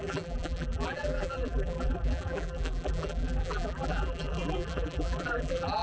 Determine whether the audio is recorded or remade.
remade